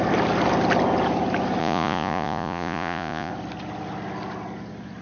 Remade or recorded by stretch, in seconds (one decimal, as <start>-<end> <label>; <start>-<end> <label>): 0.0-1.6 recorded; 1.6-3.3 remade; 3.3-5.0 recorded